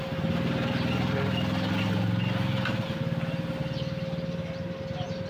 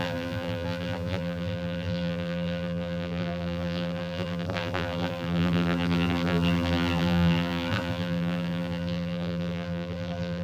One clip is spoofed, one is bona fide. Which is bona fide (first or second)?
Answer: first